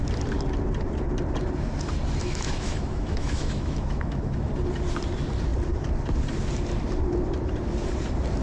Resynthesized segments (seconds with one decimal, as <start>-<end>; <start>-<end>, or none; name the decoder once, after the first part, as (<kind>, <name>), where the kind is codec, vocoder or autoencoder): 2.2-4.5 (autoencoder, DAC-VAE)